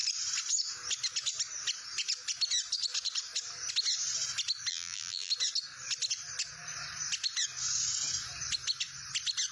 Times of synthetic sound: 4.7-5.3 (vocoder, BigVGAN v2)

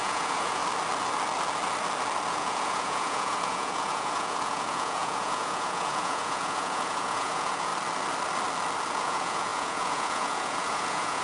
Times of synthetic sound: 0.0-0.6 (vocoder, Vocos); 2.3-7.7; 8.9-11.2

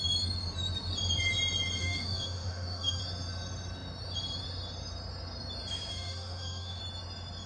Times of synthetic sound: 1.8-3.0 (autoencoder, DAC-VAE); 5.9-6.8

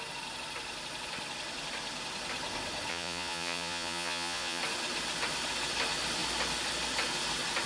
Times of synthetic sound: 2.9-4.6 (vocoder, Vocos)

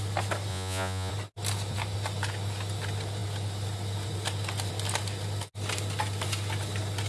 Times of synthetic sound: 0.5-1.1 (vocoder, Vocos)

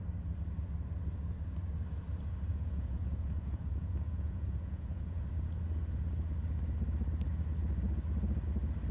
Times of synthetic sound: 2.5-5.2 (vocoder, Vocos)

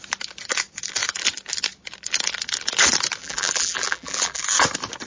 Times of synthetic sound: 3.2-4.4 (vocoder, BigVGAN v2)

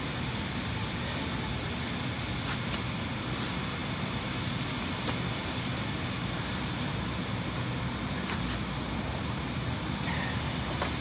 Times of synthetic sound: none